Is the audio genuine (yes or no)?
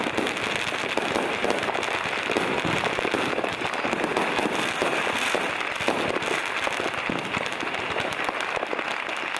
yes